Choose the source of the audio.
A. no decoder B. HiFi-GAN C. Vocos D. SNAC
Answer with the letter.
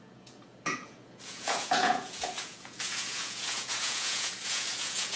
C